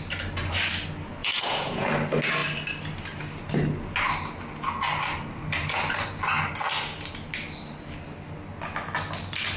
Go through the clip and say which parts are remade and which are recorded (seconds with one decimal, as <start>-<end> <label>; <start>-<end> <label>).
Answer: 0.0-1.2 recorded; 1.2-1.9 remade; 1.9-9.6 recorded